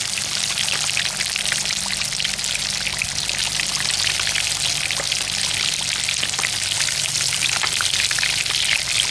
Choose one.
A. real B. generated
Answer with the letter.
A